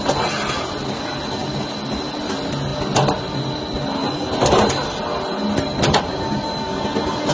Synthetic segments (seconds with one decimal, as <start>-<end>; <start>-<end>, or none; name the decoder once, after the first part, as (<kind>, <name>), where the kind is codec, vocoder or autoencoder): none